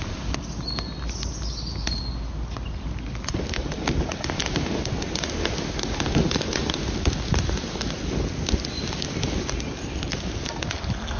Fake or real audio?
real